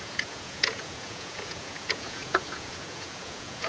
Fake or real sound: fake